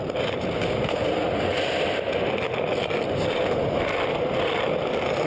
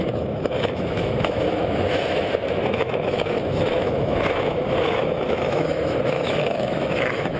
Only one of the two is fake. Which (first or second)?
second